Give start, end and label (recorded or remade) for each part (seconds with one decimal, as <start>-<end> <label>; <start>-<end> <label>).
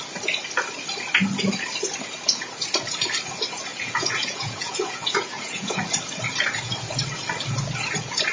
0.0-3.7 recorded; 3.7-6.0 remade; 6.0-8.3 recorded